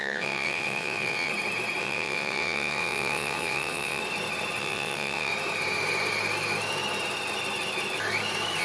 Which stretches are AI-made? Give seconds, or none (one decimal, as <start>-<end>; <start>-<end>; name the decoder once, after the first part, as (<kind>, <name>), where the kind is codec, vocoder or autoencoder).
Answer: 0.0-1.3 (vocoder, WaveNeXt); 1.8-4.0; 4.6-5.3